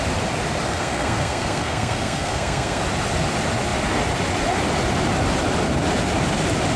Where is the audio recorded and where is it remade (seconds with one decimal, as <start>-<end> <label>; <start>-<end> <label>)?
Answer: 0.0-0.7 recorded; 0.7-2.8 remade; 2.8-6.8 recorded